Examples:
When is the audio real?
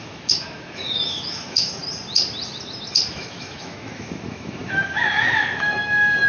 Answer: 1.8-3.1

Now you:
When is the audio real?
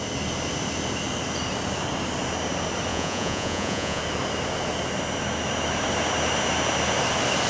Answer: 0.0-2.9; 4.0-7.5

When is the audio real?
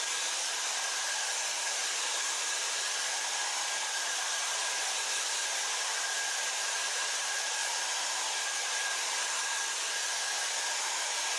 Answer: 7.6-11.4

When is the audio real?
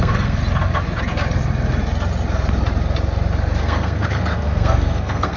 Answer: 0.4-3.6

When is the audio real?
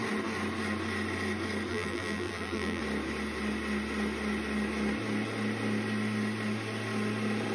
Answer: 0.0-1.7; 2.8-7.5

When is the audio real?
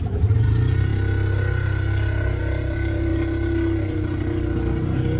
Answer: 0.0-5.2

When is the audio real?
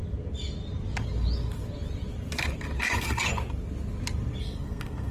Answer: 0.0-2.8; 3.3-4.4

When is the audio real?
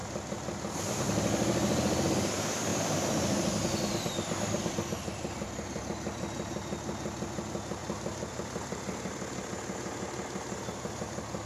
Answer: 2.3-2.7; 5.8-7.8; 9.5-11.5